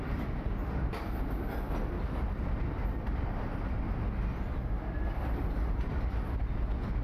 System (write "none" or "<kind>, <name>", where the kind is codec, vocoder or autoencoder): none